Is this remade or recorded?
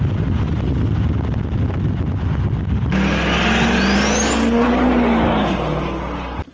recorded